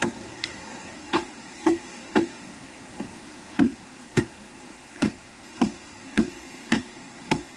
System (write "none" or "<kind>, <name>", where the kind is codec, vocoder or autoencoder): codec, SNAC